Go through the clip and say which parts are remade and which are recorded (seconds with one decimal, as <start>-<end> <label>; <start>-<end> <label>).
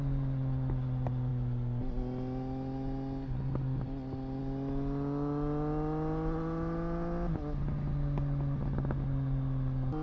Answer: 0.0-10.0 recorded